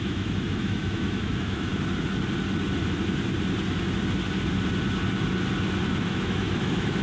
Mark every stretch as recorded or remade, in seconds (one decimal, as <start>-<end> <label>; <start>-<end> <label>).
0.0-1.7 remade; 1.7-5.9 recorded; 5.9-7.0 remade